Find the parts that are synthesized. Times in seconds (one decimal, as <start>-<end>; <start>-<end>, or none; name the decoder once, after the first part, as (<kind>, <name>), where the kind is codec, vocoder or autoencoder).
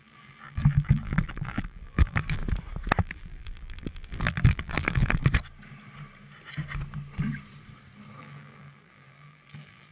0.0-2.4 (vocoder, BigVGAN v2); 3.0-5.2; 8.2-9.9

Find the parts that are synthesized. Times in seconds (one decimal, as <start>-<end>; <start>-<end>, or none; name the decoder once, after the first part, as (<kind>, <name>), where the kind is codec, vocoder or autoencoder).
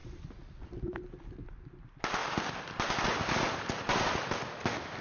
0.0-1.5 (vocoder, BigVGAN v2)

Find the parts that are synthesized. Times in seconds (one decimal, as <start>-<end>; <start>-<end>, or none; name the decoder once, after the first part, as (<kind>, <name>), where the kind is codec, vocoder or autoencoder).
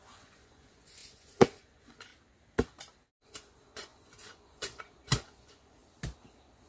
0.0-2.1 (vocoder, Vocos); 3.1-5.8